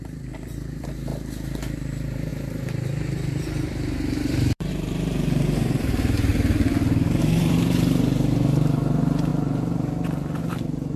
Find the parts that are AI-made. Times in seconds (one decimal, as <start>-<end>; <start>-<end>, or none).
0.0-1.1; 1.8-6.3; 7.1-9.3; 10.4-11.0